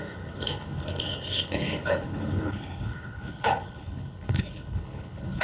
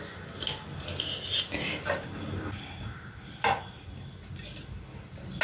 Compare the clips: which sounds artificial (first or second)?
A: first